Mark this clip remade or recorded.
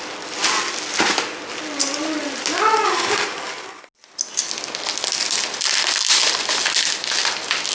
recorded